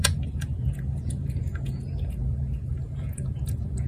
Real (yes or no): no